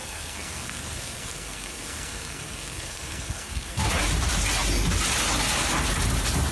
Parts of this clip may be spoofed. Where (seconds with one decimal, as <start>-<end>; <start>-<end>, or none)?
0.0-3.9